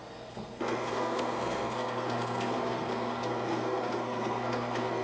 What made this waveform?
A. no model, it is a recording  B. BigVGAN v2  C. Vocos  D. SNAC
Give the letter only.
D